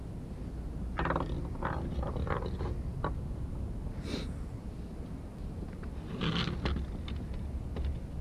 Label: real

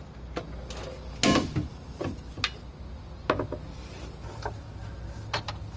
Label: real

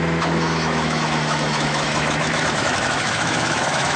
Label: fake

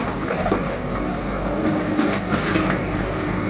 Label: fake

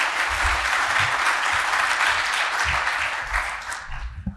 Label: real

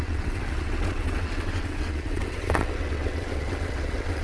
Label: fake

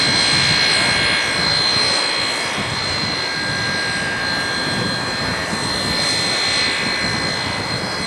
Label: fake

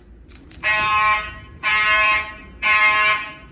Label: fake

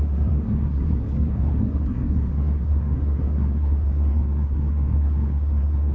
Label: fake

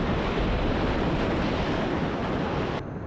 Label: real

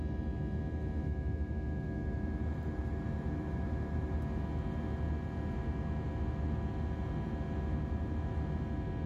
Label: real